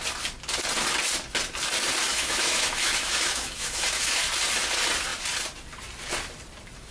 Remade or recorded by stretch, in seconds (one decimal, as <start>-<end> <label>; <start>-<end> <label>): 0.0-2.1 recorded; 2.1-4.2 remade; 4.2-6.9 recorded